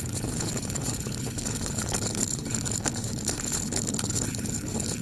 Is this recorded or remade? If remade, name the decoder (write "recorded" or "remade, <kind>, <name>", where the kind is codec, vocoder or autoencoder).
remade, codec, HILCodec